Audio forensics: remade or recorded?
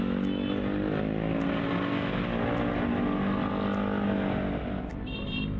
recorded